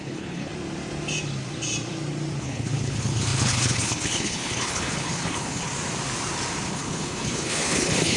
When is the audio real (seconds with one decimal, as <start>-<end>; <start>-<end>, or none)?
0.5-2.4; 5.7-6.7